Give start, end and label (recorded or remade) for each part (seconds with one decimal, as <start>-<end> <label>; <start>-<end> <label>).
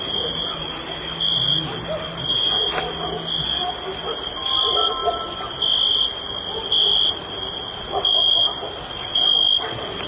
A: 0.0-10.1 recorded